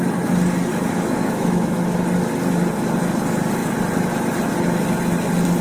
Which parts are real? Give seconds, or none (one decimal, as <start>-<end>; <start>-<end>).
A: 0.0-0.7; 1.8-5.6